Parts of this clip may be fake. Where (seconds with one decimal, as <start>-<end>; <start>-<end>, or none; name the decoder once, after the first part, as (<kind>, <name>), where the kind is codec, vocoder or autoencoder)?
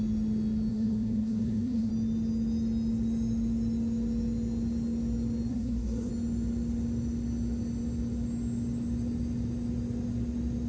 0.7-1.9 (codec, SNAC); 5.5-6.1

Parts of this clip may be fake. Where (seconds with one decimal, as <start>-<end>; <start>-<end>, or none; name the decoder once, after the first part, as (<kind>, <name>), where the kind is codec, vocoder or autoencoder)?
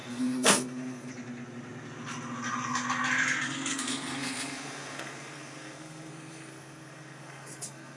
0.0-1.1 (codec, SNAC); 3.7-8.0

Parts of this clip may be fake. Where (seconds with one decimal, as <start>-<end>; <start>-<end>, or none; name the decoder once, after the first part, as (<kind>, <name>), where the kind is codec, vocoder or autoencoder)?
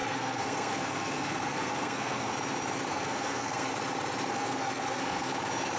0.0-2.3 (codec, SNAC); 2.9-3.7; 4.3-5.3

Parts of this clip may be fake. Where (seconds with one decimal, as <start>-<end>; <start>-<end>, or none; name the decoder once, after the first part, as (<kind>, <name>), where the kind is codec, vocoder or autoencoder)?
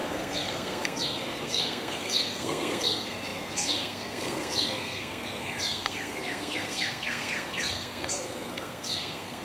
0.0-9.4 (codec, SNAC)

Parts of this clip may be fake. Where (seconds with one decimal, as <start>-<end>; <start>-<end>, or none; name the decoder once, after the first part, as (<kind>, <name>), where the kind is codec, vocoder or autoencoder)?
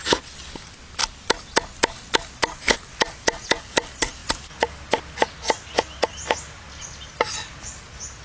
none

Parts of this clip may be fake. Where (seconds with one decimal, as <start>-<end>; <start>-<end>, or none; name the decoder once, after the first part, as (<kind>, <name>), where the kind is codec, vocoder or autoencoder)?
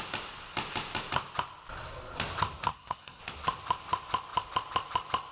2.7-3.2 (codec, SNAC)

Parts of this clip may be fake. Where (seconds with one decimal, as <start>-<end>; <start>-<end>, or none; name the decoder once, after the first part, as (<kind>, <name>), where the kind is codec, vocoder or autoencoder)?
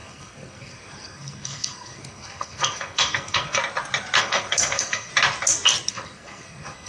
0.0-3.6 (codec, SNAC); 4.2-5.1; 5.9-6.9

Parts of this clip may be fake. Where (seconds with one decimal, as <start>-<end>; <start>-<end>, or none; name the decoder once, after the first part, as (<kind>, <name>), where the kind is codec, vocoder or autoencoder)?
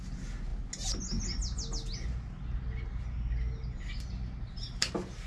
none